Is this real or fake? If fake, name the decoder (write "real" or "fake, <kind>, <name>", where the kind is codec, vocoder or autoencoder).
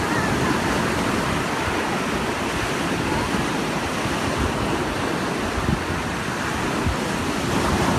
real